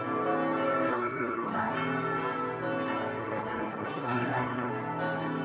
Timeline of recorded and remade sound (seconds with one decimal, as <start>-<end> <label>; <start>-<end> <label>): 0.0-0.9 recorded; 0.9-1.7 remade; 1.7-3.2 recorded; 3.2-4.7 remade; 4.7-5.4 recorded